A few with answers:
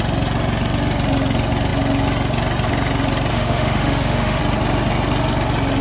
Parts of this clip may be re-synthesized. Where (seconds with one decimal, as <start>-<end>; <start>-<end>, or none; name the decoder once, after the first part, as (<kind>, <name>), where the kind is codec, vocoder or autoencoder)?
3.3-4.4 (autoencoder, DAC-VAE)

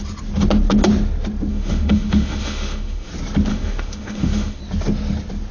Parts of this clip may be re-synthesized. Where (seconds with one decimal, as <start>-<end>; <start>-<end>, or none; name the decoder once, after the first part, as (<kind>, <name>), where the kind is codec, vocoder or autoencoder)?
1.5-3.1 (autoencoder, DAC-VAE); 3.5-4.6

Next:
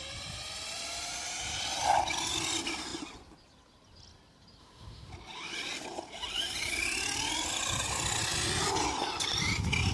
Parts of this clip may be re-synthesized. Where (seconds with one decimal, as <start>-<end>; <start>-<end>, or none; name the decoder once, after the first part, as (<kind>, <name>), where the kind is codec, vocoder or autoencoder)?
4.6-5.1 (autoencoder, DAC-VAE)

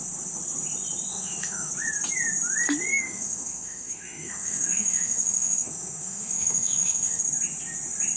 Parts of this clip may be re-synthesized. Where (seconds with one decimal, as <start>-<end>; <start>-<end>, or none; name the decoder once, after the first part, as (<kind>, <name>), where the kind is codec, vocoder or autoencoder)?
1.1-1.7 (autoencoder, DAC-VAE); 2.9-7.2

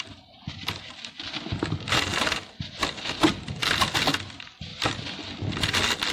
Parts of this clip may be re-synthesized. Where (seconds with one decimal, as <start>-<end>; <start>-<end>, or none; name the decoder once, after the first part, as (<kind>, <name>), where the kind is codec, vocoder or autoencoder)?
none

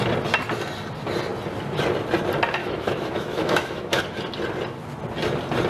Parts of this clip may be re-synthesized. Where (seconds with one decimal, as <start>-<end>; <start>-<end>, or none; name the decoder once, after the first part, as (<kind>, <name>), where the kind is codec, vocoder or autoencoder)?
2.6-4.0 (autoencoder, DAC-VAE)